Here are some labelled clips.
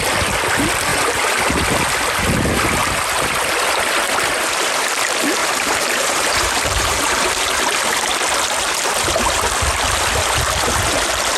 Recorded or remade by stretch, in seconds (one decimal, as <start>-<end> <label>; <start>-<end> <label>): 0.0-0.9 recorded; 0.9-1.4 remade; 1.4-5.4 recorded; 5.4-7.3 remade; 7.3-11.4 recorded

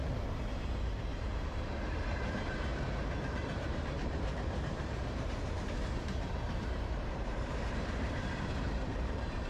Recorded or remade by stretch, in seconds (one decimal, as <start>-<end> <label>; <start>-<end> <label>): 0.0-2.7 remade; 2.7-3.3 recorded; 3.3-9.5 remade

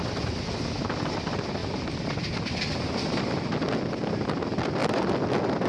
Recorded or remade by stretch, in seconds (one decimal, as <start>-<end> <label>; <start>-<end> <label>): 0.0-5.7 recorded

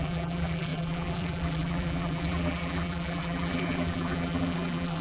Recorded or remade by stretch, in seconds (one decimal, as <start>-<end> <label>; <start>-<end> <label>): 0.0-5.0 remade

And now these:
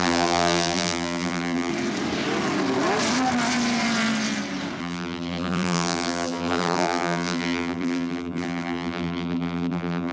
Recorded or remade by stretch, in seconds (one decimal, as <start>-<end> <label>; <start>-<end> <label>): 0.0-1.7 remade; 1.7-4.8 recorded; 4.8-10.1 remade

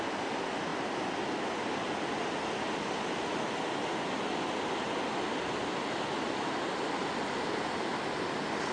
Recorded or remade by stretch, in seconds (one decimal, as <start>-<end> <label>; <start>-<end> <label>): 0.0-8.7 recorded

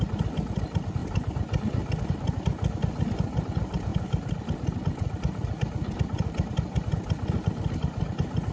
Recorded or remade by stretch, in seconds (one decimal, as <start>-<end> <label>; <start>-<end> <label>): 0.0-1.0 recorded; 1.0-2.1 remade; 2.1-3.9 recorded; 3.9-6.9 remade; 6.9-8.5 recorded

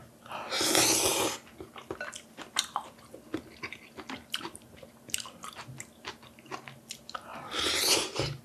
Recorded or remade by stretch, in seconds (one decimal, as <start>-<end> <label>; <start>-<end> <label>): 0.0-7.3 recorded; 7.3-8.4 remade